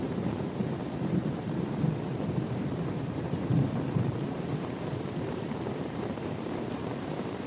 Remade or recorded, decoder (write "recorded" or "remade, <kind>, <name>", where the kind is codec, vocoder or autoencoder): remade, vocoder, BigVGAN v2